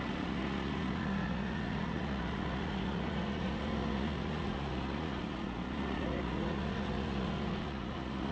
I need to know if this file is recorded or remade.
remade